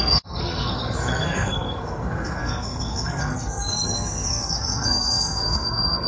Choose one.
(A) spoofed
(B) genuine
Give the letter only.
A